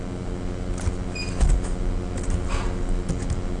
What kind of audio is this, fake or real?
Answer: real